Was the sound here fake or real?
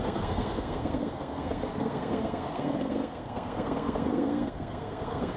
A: fake